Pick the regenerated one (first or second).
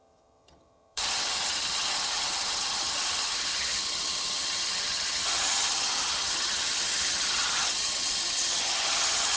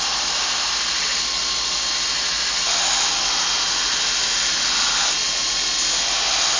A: first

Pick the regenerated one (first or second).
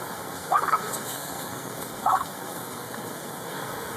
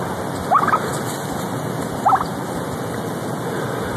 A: first